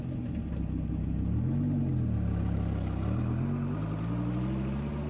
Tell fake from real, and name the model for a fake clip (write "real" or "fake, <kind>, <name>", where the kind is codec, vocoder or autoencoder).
real